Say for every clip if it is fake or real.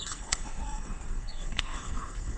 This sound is fake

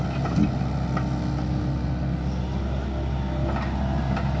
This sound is real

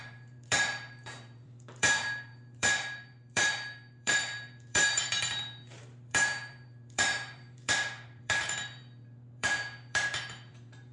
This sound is fake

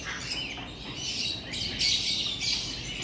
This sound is real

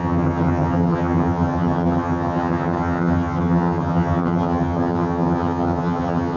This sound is fake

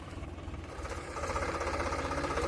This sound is fake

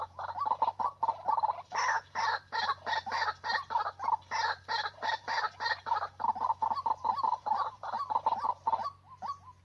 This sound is real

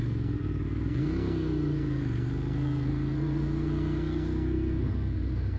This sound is fake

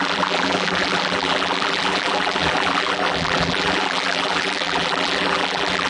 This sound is fake